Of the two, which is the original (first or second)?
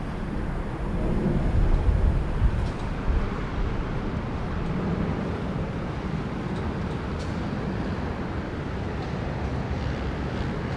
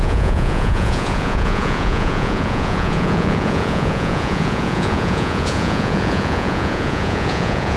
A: first